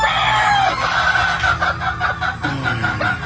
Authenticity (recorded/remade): recorded